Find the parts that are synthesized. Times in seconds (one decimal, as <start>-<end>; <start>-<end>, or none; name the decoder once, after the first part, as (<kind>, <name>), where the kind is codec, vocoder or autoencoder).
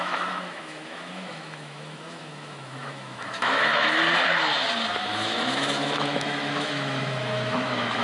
0.0-4.0 (autoencoder, DAC-VAE); 4.9-8.0